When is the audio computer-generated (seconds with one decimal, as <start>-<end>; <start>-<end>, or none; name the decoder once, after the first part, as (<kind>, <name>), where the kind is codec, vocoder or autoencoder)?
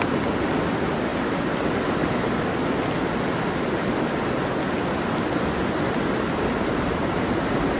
none